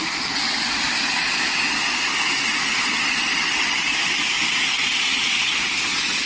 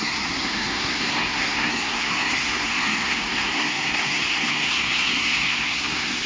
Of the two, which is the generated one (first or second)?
second